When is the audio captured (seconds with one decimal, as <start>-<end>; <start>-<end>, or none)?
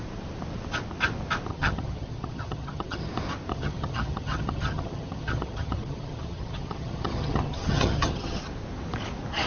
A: 0.0-1.5; 3.1-3.5; 8.4-9.5